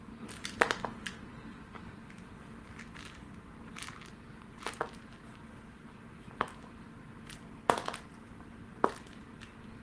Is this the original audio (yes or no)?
yes